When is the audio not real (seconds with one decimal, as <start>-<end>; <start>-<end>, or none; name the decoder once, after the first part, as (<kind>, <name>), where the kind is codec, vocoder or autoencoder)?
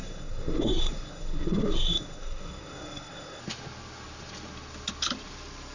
0.0-3.4 (codec, SNAC)